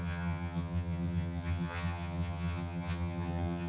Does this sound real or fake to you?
fake